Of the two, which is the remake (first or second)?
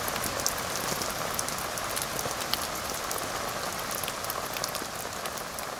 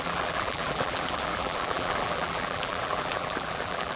second